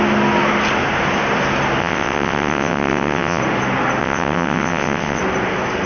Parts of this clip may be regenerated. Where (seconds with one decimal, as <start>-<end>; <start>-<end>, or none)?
1.8-3.4; 4.0-5.2